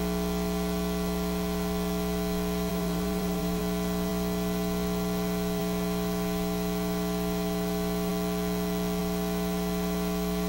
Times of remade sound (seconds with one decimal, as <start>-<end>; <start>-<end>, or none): 2.7-3.6